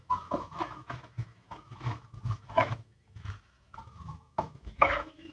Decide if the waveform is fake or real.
fake